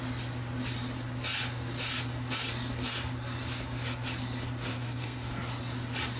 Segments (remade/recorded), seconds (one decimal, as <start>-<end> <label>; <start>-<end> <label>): 0.0-4.7 recorded; 4.7-5.4 remade; 5.4-6.2 recorded